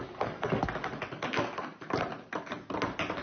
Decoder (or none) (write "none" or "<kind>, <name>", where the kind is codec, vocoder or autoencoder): none